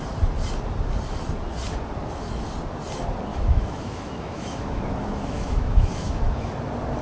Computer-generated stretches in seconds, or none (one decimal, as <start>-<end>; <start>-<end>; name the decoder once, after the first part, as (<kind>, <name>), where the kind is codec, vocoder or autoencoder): 3.3-6.5 (autoencoder, DAC-VAE)